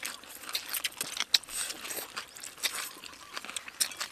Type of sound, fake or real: real